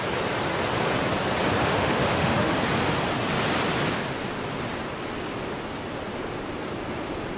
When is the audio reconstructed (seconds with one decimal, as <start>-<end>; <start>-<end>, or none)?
1.6-2.5